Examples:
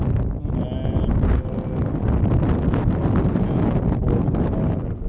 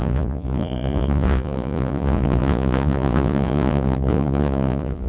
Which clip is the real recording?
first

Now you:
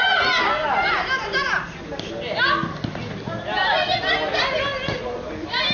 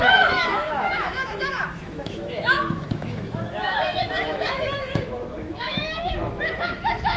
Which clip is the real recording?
first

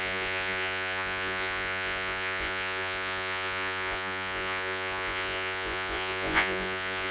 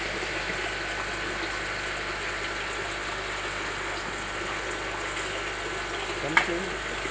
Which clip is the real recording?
second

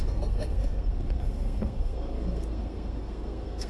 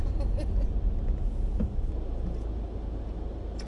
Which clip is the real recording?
second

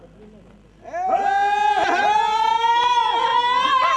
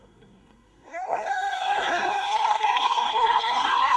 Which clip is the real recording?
first